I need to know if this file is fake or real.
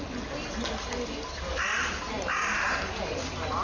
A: real